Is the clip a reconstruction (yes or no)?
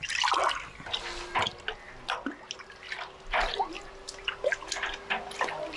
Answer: no